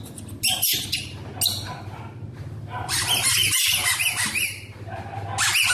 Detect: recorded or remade recorded